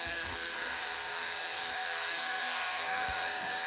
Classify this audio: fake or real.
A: fake